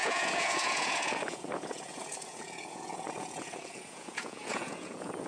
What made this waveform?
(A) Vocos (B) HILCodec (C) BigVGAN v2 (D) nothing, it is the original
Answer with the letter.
A